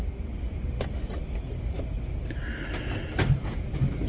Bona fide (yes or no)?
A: yes